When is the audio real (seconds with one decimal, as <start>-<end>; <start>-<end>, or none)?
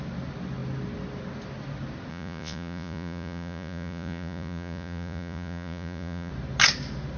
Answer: 0.0-2.1; 6.3-7.2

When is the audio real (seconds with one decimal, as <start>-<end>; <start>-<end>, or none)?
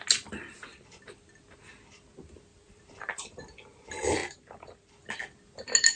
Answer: 0.0-2.5; 3.4-4.2; 4.9-6.0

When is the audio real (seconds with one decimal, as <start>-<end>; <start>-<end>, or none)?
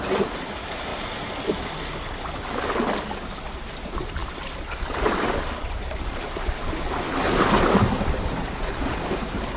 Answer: 0.9-3.5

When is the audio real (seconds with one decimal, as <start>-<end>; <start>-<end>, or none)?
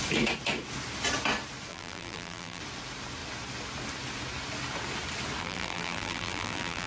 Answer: 0.0-1.7; 2.6-5.4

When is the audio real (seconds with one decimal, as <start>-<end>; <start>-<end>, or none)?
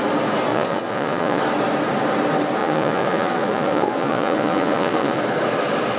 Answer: 0.0-0.5; 1.4-2.6; 5.2-6.0